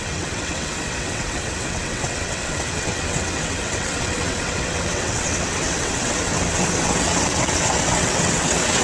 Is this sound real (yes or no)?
no